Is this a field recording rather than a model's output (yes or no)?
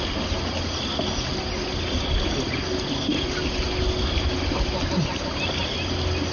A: yes